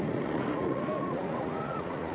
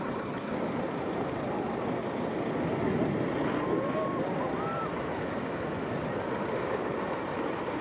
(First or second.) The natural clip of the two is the second